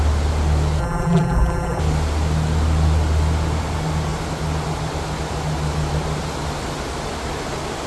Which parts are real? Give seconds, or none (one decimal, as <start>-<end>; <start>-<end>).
0.0-0.8; 1.8-7.9

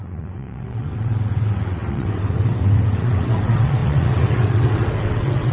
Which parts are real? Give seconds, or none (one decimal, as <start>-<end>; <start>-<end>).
none

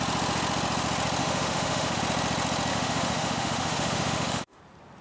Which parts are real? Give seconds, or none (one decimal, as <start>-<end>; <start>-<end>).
0.0-1.2; 2.0-2.7; 4.6-5.0

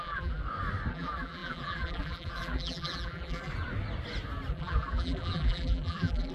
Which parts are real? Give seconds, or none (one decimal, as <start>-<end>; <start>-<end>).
0.4-0.9; 3.5-4.5

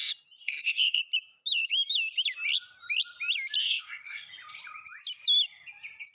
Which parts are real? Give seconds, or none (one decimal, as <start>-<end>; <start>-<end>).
0.0-0.4; 1.0-3.6; 4.3-6.1

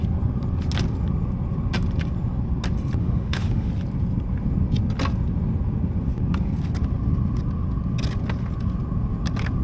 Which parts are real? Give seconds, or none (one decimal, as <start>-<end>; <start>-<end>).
0.0-3.0; 3.7-9.6